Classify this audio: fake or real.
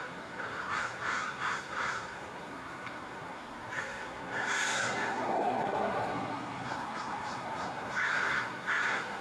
fake